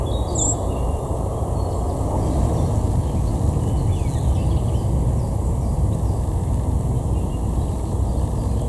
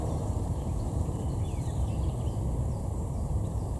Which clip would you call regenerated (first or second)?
second